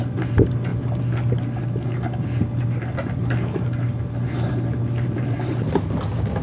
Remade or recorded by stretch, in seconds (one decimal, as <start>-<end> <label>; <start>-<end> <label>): 0.0-6.4 recorded